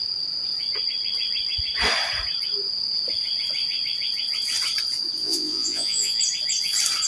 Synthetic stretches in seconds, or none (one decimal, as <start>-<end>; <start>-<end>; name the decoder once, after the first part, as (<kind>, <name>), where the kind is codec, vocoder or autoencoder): 5.2-6.2 (vocoder, Vocos)